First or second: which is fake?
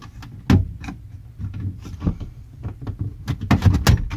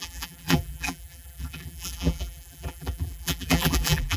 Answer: second